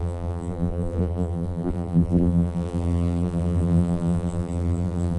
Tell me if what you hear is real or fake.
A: fake